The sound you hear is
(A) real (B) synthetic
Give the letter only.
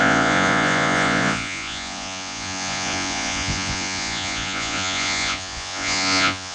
B